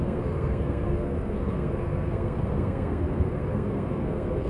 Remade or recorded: remade